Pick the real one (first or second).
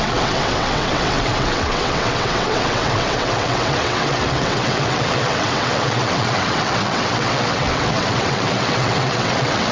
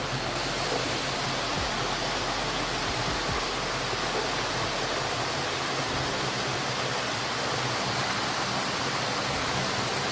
second